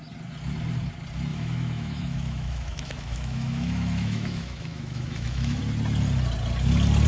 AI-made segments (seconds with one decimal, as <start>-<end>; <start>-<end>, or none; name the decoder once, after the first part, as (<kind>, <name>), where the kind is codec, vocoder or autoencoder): 1.3-5.6 (autoencoder, DAC-VAE)